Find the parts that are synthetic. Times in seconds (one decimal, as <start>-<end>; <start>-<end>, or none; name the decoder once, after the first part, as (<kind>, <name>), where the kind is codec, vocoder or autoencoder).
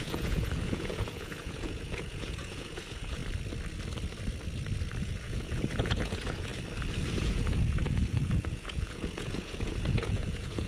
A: 0.0-3.2 (vocoder, Vocos); 5.0-6.5; 7.2-10.7